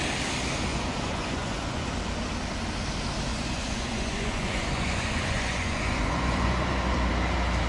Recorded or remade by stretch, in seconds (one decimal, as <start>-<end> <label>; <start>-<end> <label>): 0.0-0.7 recorded; 0.7-1.9 remade; 1.9-3.3 recorded; 3.3-7.1 remade; 7.1-7.7 recorded